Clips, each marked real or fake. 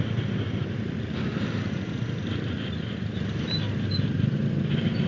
real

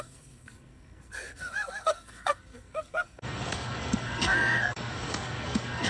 fake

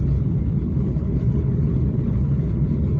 fake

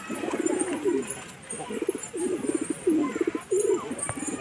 real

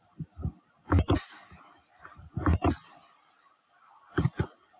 real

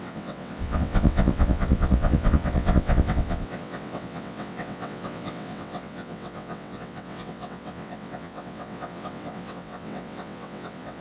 fake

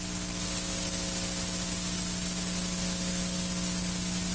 real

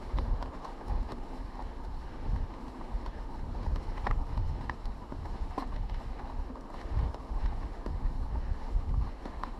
fake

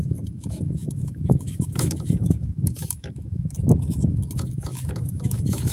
fake